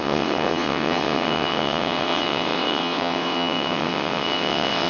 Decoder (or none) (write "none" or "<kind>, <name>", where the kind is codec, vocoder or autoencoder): vocoder, WaveNeXt